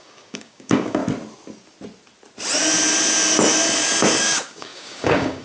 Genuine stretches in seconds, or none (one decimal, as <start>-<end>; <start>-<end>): 1.0-4.2